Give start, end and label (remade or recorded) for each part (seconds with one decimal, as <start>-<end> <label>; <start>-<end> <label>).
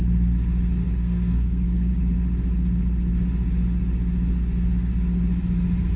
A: 0.0-0.8 recorded; 0.8-1.9 remade; 1.9-6.0 recorded